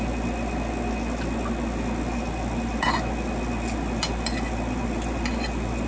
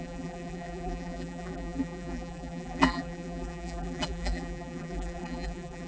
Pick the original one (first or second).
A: first